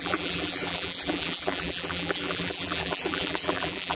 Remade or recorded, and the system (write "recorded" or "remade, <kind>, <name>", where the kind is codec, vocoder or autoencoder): remade, vocoder, BigVGAN v2